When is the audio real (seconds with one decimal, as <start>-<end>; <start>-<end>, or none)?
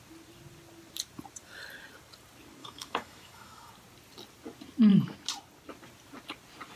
0.0-2.6; 3.7-6.8